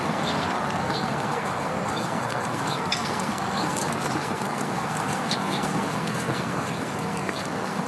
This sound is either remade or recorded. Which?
remade